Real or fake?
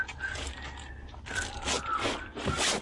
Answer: real